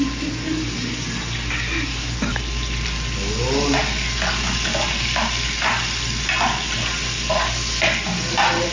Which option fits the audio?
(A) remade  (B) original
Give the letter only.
B